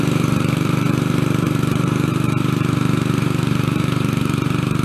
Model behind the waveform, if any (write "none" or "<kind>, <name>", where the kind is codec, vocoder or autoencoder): vocoder, BigVGAN v2